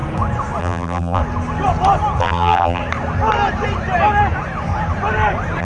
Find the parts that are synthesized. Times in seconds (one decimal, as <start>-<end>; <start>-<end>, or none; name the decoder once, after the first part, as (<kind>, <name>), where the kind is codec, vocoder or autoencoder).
0.6-1.2 (vocoder, BigVGAN v2); 2.2-2.8